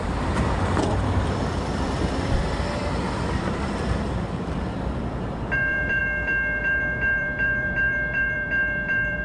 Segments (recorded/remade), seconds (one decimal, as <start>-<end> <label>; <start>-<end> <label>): 0.0-6.0 remade; 6.0-6.6 recorded; 6.6-9.2 remade